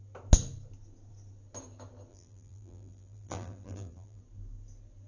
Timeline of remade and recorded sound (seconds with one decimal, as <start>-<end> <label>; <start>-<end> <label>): 0.0-2.1 recorded; 2.1-4.2 remade; 4.2-5.1 recorded

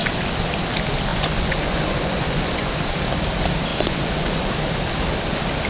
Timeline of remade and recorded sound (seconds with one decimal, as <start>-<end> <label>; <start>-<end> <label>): 0.0-1.1 recorded; 1.1-2.7 remade; 2.7-3.7 recorded; 3.7-4.5 remade; 4.5-5.7 recorded

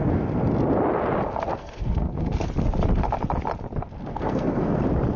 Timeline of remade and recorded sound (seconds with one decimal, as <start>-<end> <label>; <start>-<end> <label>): 0.0-1.5 recorded; 1.5-2.5 remade; 2.5-4.1 recorded; 4.1-4.8 remade; 4.8-5.2 recorded

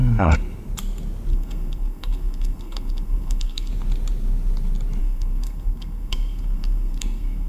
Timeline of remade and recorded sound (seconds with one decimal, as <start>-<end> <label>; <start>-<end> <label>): 0.0-1.3 recorded; 1.3-3.7 remade; 3.7-5.0 recorded; 5.0-7.5 remade

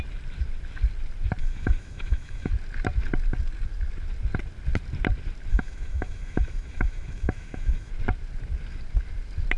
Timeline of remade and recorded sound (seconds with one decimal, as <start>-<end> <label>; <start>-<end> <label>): 0.0-1.4 recorded; 1.4-2.5 remade; 2.5-5.5 recorded; 5.5-7.9 remade; 7.9-9.6 recorded

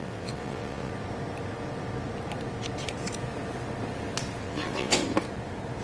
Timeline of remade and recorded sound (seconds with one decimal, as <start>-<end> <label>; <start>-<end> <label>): 0.0-0.9 remade; 0.9-4.4 recorded; 4.4-5.0 remade; 5.0-5.8 recorded